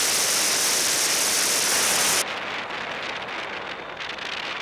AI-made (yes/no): no